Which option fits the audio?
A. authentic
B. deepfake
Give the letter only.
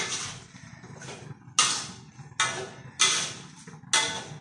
A